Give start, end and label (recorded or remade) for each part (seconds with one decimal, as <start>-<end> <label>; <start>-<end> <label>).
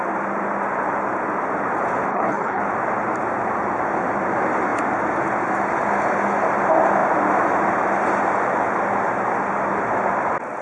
0.0-2.1 recorded; 2.1-2.6 remade; 2.6-10.6 recorded